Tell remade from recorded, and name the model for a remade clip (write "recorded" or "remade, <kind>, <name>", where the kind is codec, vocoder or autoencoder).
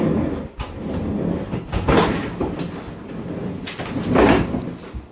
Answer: recorded